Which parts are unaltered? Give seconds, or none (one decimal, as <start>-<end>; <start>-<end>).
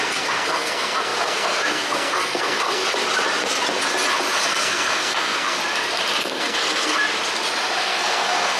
2.8-4.5; 5.6-6.2; 7.0-7.8